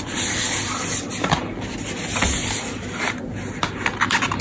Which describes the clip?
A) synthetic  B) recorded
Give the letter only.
B